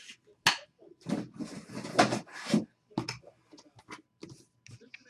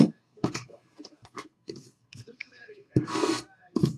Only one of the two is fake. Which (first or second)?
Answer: second